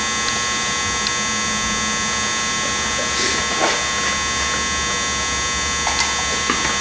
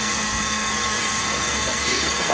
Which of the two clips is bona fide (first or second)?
first